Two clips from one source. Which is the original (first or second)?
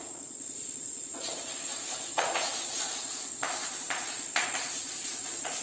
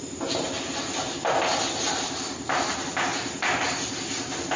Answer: second